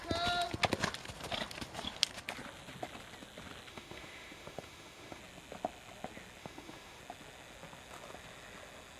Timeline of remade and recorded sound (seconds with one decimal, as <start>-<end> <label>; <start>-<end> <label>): 0.0-3.7 recorded; 3.7-5.2 remade; 5.2-6.4 recorded; 6.4-7.0 remade; 7.0-9.0 recorded